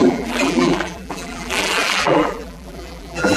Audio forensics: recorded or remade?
remade